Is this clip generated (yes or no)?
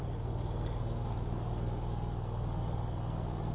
yes